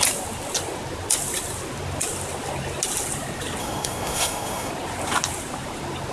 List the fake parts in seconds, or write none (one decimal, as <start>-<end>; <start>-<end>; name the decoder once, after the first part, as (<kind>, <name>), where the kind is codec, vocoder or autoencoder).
3.6-4.7 (codec, SNAC)